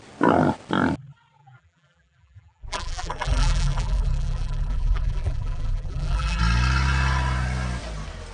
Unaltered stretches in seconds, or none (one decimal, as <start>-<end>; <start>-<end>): 0.0-1.4; 6.4-8.3

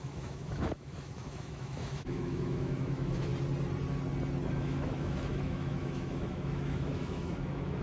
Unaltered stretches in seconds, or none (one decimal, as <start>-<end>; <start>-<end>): 3.3-4.5

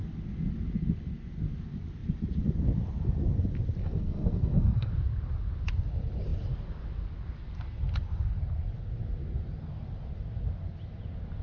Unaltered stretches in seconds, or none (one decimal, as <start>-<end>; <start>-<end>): 0.0-3.8; 4.9-11.4

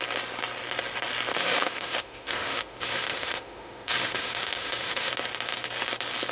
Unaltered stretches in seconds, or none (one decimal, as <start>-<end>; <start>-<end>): 0.0-1.3; 5.1-6.3